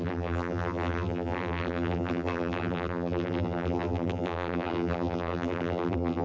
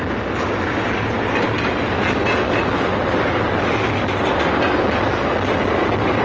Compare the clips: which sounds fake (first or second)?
first